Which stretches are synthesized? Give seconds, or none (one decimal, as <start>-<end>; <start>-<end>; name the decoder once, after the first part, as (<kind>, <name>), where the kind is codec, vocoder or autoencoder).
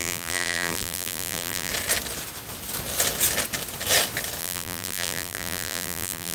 0.0-1.7 (vocoder, BigVGAN v2); 4.4-6.3